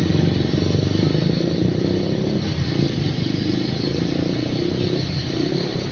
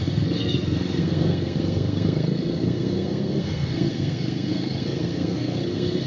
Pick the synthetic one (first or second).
second